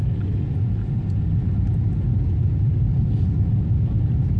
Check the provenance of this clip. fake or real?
real